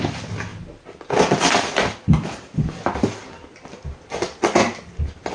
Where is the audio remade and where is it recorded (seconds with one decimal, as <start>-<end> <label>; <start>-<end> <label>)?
0.0-5.3 recorded